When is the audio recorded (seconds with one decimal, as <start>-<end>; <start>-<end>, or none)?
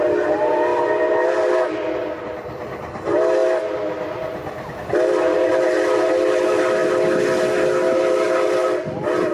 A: 0.0-9.3